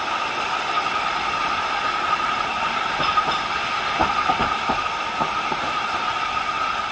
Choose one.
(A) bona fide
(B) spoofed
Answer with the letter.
A